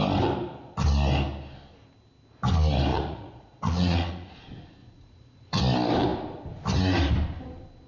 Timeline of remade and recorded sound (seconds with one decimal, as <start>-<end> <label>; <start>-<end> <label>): 0.0-2.9 recorded; 2.9-4.3 remade; 4.3-4.8 recorded; 4.8-5.6 remade; 5.6-7.9 recorded